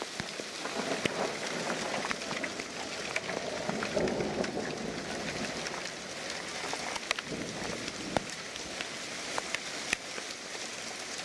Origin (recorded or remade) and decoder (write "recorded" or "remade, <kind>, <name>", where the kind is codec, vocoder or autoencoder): recorded